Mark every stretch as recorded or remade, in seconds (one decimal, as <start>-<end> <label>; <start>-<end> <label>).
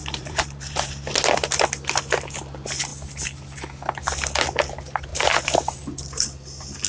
0.0-0.9 remade; 0.9-5.1 recorded; 5.1-5.8 remade; 5.8-6.9 recorded